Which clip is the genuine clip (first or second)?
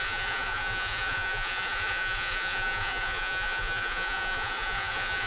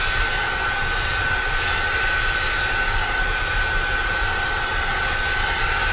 second